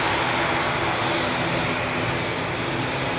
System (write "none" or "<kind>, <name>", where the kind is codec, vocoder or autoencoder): none